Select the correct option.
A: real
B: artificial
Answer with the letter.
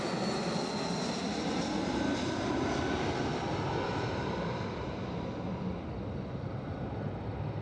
A